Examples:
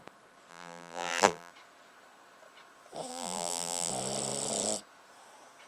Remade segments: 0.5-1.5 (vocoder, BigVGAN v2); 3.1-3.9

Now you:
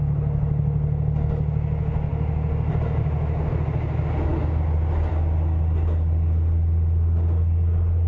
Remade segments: none

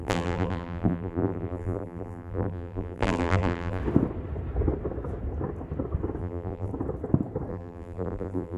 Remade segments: 0.0-3.8 (vocoder, BigVGAN v2); 6.2-6.7; 7.5-8.6

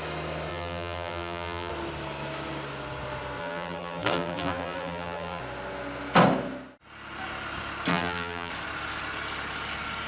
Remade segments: 0.5-1.7 (vocoder, BigVGAN v2); 3.4-5.4; 7.9-8.5

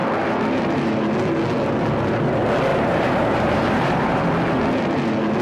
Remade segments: 2.7-4.2 (vocoder, BigVGAN v2)